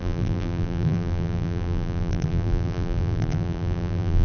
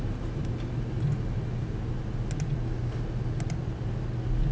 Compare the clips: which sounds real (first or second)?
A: second